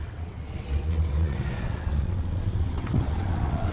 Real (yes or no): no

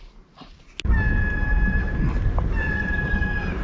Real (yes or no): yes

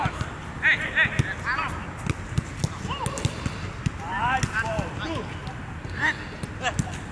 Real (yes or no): yes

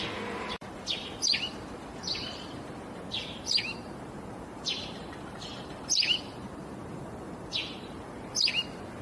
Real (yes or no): no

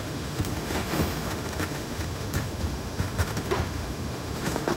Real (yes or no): no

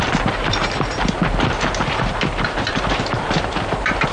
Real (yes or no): no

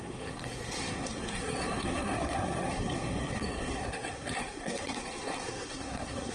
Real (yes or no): no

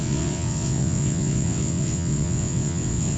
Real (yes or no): no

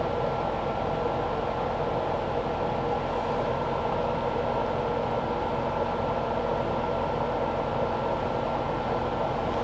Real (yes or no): yes